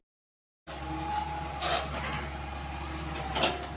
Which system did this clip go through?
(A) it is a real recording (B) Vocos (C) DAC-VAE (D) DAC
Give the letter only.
A